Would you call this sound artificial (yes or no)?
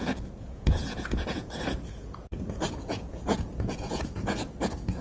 yes